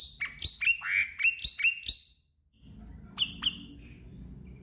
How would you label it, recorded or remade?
recorded